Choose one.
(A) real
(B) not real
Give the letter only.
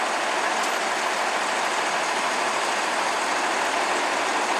A